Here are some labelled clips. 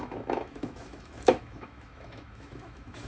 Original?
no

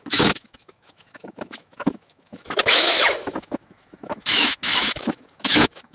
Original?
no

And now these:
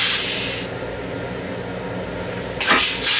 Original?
yes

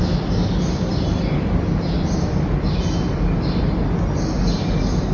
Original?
yes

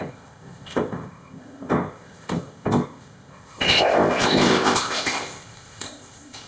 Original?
no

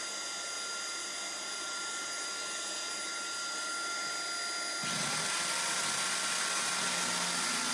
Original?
yes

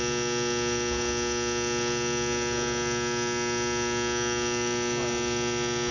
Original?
yes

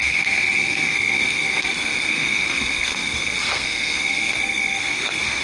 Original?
no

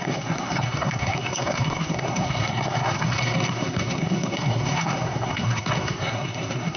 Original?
no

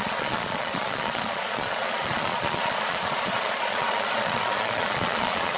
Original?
no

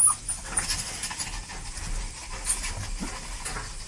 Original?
yes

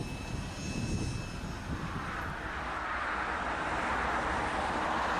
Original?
yes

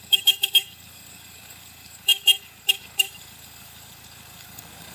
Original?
no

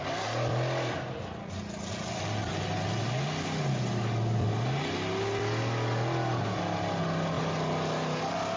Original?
yes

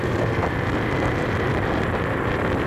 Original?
yes